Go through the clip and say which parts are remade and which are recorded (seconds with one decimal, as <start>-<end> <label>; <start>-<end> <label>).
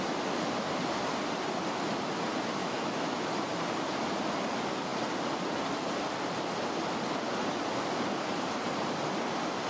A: 0.0-2.6 recorded; 2.6-3.3 remade; 3.3-9.7 recorded